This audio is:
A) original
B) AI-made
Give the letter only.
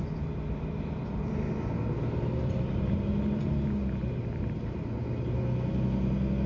A